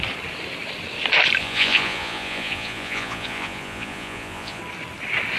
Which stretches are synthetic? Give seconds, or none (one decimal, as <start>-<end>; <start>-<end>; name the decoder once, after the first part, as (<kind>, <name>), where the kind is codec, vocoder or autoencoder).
1.4-4.6 (vocoder, Vocos)